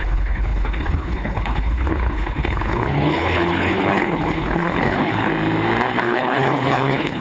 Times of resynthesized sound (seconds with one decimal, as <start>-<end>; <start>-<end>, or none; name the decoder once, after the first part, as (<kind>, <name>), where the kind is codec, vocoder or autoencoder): 0.0-5.3 (codec, HILCodec); 6.0-7.2